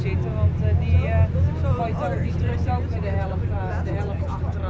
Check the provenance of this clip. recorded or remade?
recorded